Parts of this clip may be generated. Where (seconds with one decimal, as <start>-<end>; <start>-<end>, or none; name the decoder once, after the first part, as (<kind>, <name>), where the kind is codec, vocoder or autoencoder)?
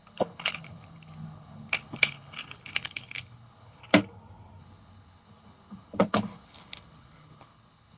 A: 0.0-3.8 (codec, HILCodec); 4.6-8.0